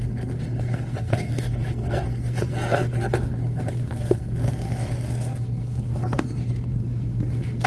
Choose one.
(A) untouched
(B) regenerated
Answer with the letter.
B